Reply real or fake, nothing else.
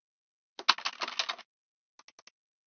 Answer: real